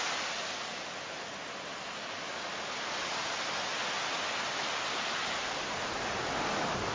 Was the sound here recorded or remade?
recorded